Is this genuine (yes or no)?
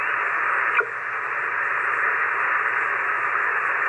yes